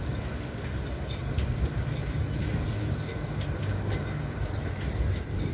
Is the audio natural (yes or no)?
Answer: yes